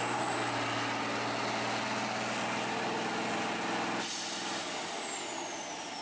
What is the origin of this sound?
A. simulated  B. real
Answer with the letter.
B